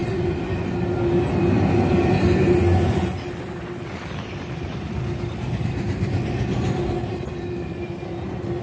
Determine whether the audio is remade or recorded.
recorded